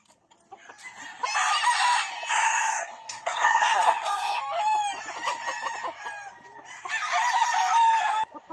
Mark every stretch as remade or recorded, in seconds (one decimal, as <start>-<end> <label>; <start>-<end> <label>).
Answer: 0.0-2.3 recorded; 2.3-4.4 remade; 4.4-8.5 recorded